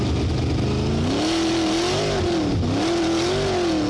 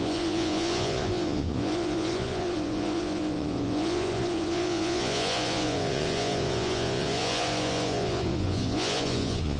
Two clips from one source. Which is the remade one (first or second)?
second